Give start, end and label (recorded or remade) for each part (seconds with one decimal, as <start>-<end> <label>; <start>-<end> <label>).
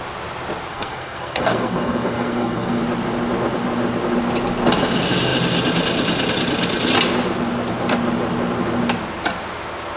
0.0-0.7 recorded; 0.7-2.8 remade; 2.8-10.0 recorded